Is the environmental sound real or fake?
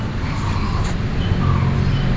real